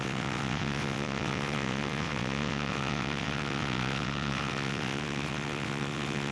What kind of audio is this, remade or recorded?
remade